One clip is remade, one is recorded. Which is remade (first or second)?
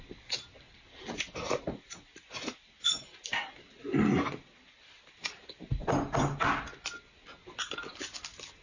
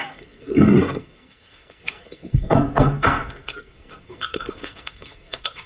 second